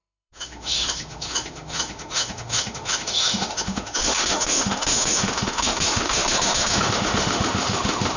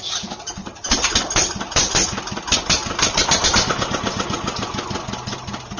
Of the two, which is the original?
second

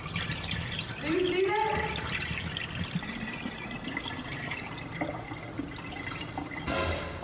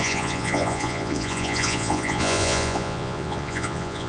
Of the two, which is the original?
first